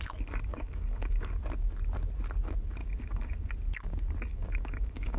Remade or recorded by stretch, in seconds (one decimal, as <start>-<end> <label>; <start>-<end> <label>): 0.0-0.5 recorded; 0.5-1.3 remade; 1.3-2.8 recorded; 2.8-3.5 remade; 3.5-4.3 recorded; 4.3-5.2 remade